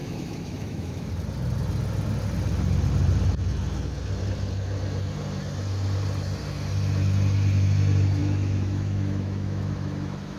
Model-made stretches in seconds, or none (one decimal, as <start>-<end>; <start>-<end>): 0.0-1.1; 8.2-10.4